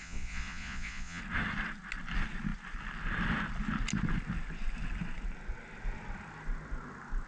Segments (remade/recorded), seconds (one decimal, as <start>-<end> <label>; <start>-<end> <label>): 0.0-1.2 remade; 1.2-7.3 recorded